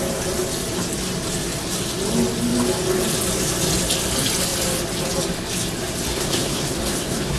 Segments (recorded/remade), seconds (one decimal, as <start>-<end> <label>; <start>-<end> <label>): 0.0-6.1 recorded; 6.1-7.4 remade